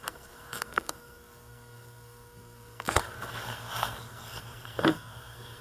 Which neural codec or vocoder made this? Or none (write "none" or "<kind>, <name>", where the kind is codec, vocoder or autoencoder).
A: codec, SNAC